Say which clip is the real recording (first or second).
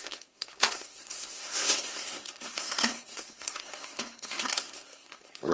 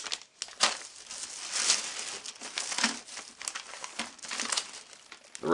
second